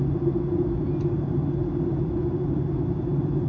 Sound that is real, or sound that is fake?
real